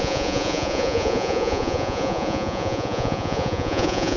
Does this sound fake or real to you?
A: fake